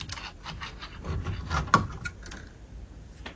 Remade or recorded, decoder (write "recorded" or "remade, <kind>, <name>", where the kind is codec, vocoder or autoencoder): recorded